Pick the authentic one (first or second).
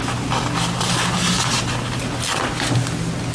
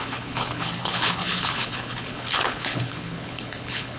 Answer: first